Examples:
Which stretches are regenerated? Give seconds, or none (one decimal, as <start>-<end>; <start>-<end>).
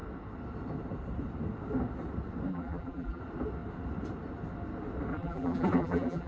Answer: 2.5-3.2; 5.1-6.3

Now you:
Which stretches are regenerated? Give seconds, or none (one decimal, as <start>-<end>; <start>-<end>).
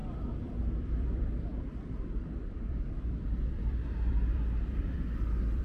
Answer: 0.0-5.6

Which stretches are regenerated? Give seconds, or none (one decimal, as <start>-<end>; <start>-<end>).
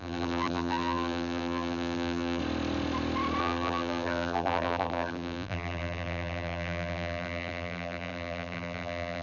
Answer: 0.0-2.4; 3.4-9.2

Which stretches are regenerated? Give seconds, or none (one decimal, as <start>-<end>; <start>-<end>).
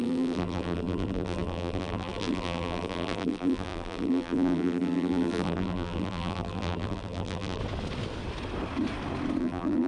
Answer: 0.0-7.6; 9.4-9.9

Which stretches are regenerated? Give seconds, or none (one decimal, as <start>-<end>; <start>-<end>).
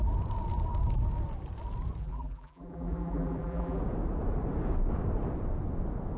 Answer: 2.0-3.8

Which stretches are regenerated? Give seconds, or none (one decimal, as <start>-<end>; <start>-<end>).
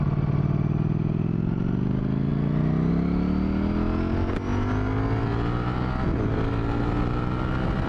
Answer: none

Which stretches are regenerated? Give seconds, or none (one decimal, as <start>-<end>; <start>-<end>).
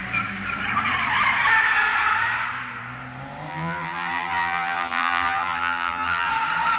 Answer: 3.5-6.3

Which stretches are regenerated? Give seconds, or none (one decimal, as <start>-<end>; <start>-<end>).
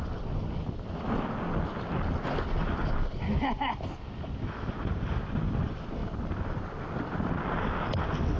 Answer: none